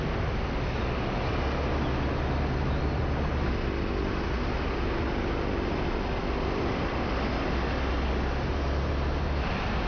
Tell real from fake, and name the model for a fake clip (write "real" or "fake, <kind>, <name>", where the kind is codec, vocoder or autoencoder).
real